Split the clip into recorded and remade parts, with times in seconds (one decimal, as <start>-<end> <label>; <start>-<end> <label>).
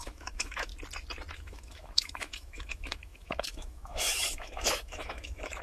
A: 0.0-0.7 remade; 0.7-1.3 recorded; 1.3-5.6 remade